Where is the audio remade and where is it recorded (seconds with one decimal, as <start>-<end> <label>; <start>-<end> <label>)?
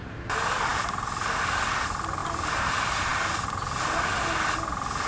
0.0-0.7 recorded; 0.7-1.3 remade; 1.3-2.2 recorded; 2.2-2.7 remade; 2.7-3.1 recorded; 3.1-4.1 remade; 4.1-5.1 recorded